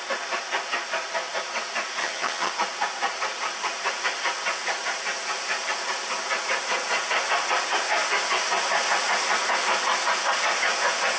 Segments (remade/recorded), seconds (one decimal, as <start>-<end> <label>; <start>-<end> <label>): 0.0-2.0 recorded; 2.0-2.5 remade; 2.5-11.2 recorded